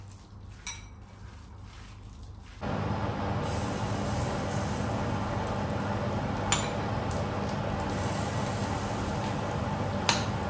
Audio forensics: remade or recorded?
recorded